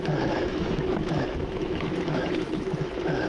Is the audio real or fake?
fake